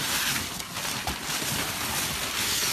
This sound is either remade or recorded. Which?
recorded